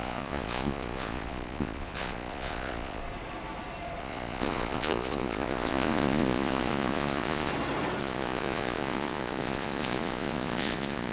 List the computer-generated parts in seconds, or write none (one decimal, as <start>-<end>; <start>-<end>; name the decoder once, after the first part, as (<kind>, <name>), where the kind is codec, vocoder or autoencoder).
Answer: 0.0-3.0 (vocoder, Vocos); 4.0-7.5; 8.0-11.1